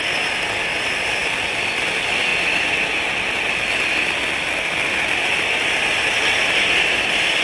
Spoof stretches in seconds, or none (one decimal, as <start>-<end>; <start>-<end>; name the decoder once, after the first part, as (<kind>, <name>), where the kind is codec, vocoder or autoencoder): none